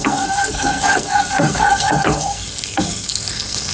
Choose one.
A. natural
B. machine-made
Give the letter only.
B